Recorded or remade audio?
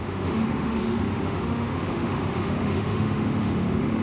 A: remade